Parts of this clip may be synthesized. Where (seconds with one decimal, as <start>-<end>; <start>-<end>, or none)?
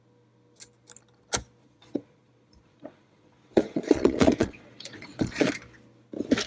1.6-5.5